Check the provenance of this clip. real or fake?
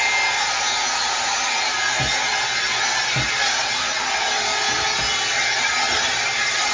real